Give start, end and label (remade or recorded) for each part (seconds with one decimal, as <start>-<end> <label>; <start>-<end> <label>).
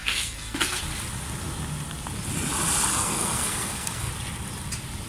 0.0-0.8 remade; 0.8-2.9 recorded; 2.9-4.1 remade; 4.1-5.1 recorded